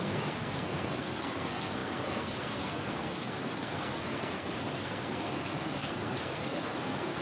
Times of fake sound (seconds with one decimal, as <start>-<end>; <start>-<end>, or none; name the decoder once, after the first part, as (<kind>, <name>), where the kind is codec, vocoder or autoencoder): 0.0-7.2 (codec, SNAC)